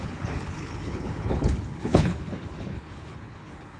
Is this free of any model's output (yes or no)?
no